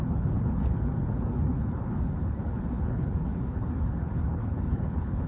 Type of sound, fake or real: fake